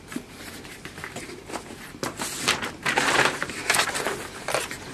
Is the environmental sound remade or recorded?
remade